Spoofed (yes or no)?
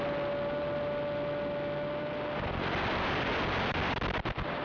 no